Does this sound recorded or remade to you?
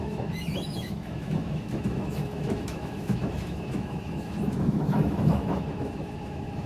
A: remade